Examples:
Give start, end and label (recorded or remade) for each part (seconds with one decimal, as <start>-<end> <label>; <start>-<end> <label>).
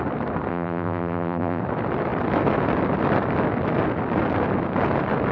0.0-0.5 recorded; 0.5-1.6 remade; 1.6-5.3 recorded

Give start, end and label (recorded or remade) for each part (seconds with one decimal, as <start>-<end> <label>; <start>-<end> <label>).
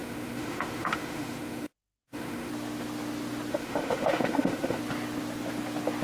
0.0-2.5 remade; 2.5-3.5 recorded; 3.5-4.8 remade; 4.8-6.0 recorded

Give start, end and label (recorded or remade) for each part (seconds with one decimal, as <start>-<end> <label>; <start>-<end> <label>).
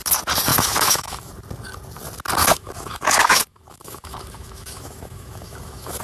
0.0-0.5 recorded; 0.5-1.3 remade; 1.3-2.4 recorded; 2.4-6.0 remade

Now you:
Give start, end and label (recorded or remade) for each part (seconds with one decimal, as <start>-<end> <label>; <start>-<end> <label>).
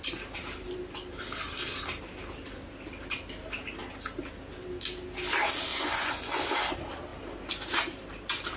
0.0-5.7 recorded; 5.7-6.4 remade; 6.4-8.6 recorded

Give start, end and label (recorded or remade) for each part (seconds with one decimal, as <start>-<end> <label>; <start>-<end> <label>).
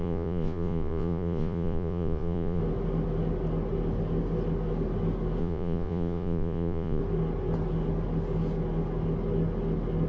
0.0-2.6 remade; 2.6-5.4 recorded; 5.4-7.0 remade; 7.0-10.1 recorded